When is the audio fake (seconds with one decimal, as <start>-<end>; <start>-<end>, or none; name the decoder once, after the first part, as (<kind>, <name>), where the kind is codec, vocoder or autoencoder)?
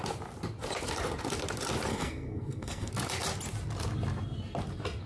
1.9-2.9 (codec, SNAC)